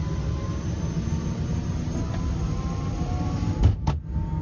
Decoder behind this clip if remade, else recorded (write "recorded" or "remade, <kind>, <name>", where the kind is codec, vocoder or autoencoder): recorded